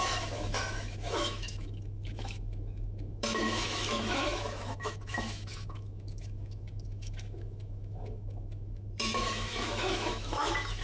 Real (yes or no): no